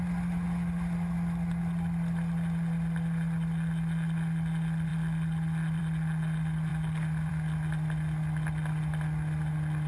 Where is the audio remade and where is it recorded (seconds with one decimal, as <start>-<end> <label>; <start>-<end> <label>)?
0.0-9.9 recorded